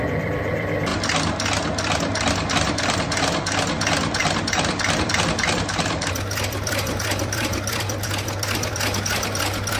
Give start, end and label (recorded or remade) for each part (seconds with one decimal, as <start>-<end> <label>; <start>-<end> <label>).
0.0-0.9 remade; 0.9-2.5 recorded; 2.5-9.8 remade